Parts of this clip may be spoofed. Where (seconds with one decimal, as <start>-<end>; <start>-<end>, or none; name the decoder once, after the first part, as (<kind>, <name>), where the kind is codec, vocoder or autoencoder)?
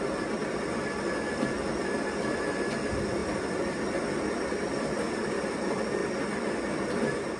0.0-6.0 (vocoder, BigVGAN v2); 6.7-7.4